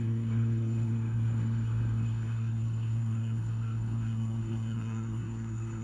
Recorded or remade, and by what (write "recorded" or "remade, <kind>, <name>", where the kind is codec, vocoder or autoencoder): remade, codec, SNAC